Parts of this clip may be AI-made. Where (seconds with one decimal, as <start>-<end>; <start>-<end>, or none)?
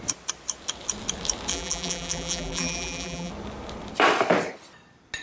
1.5-3.3